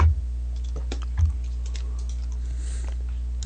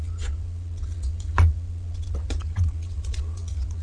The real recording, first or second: first